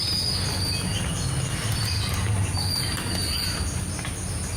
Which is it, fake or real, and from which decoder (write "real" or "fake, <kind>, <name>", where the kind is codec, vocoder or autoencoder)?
real